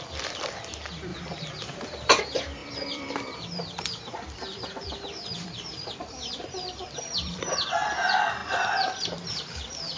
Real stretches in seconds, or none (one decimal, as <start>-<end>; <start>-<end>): 0.0-1.1; 2.2-2.6; 7.4-10.0